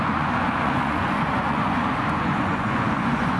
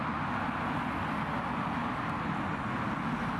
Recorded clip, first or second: second